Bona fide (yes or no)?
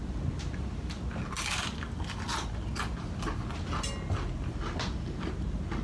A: yes